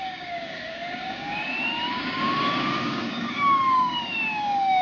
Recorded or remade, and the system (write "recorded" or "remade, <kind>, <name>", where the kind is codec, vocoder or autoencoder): remade, codec, DAC